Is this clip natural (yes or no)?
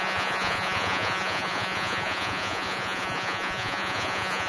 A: no